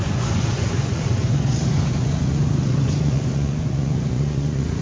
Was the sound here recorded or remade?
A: remade